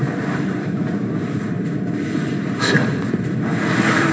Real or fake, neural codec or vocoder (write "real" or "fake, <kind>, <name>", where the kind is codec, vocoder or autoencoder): fake, vocoder, BigVGAN v2